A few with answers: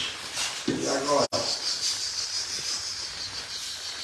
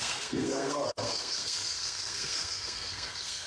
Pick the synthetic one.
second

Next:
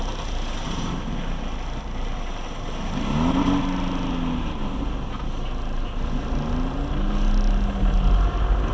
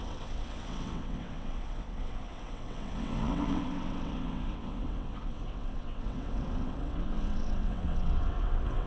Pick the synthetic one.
second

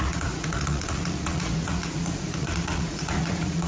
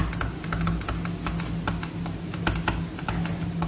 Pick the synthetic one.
first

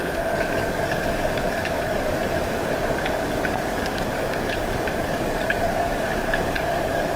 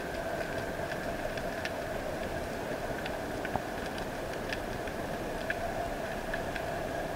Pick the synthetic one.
first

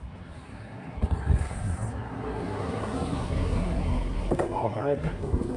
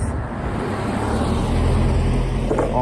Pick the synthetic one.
first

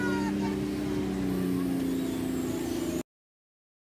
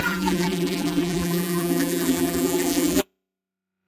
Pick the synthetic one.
second